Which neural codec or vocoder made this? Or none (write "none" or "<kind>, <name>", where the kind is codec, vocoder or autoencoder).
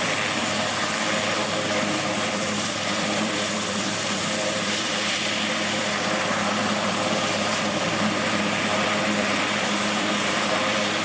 vocoder, BigVGAN v2